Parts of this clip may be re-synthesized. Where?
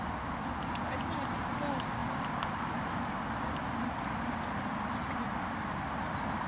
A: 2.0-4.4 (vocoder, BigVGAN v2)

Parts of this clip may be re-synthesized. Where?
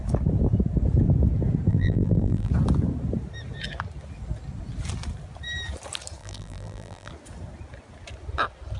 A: 1.7-2.5 (vocoder, BigVGAN v2); 6.2-7.1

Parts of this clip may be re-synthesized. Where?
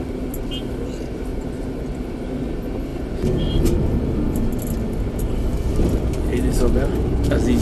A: 1.3-1.8 (vocoder, BigVGAN v2); 2.9-4.4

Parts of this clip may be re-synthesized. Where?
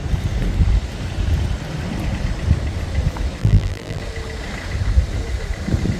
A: 3.4-4.0 (vocoder, BigVGAN v2)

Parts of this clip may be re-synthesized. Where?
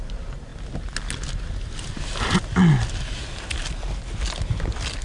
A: none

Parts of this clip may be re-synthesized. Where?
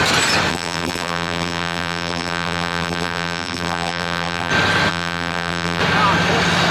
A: 0.5-4.5 (vocoder, BigVGAN v2); 4.9-5.8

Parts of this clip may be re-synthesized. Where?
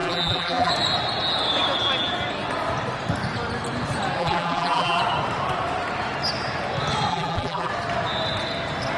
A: 0.0-0.7 (vocoder, BigVGAN v2); 4.2-5.0; 7.1-7.7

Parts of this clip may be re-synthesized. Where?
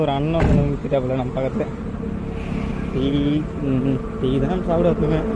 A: none